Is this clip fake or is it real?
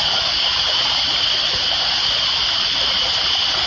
real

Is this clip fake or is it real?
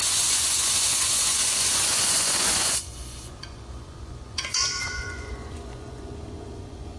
fake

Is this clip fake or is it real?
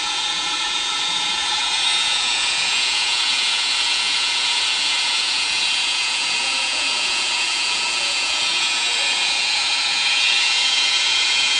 fake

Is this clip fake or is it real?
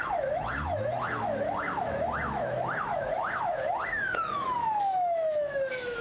fake